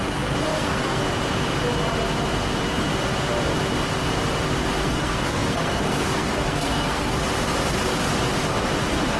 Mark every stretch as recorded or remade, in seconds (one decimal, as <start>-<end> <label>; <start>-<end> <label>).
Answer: 0.0-0.5 recorded; 0.5-1.0 remade; 1.0-4.8 recorded; 4.8-7.1 remade; 7.1-9.2 recorded